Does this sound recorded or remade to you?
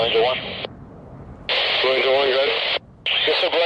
recorded